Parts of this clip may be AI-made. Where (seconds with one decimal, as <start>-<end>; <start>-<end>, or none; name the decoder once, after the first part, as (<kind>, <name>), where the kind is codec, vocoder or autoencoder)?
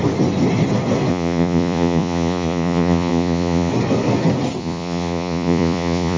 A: 1.1-3.7 (vocoder, Vocos); 4.6-6.2